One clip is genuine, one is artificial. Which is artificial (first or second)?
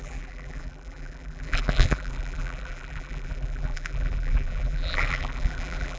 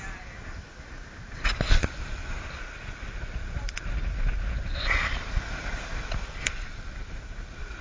first